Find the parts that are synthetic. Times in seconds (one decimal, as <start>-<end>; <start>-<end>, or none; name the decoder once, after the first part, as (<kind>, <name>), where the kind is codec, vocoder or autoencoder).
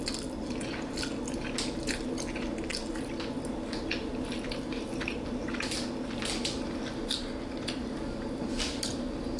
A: none